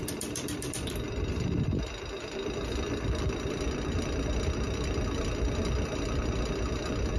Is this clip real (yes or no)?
no